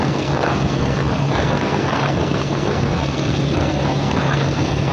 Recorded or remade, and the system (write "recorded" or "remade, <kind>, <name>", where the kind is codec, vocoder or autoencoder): remade, codec, SNAC